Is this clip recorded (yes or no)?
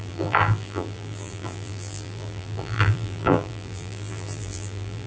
no